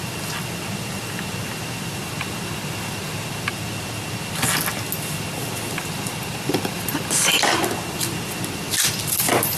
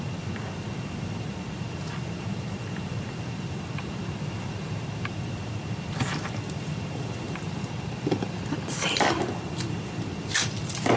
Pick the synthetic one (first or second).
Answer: second